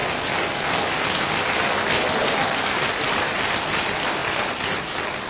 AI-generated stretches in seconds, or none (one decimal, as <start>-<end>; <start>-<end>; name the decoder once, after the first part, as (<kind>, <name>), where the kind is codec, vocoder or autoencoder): none